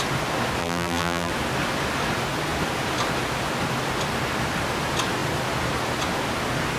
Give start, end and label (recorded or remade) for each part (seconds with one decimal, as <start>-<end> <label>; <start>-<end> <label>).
0.0-0.6 recorded; 0.6-1.3 remade; 1.3-6.8 recorded